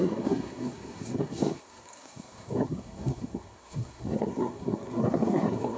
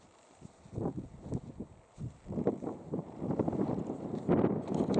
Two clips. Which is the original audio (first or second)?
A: second